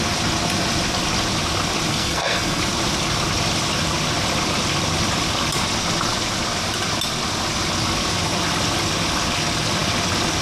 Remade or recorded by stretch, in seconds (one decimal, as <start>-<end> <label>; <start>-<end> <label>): 0.0-1.9 recorded; 1.9-2.6 remade; 2.6-10.4 recorded